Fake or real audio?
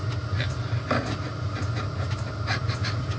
real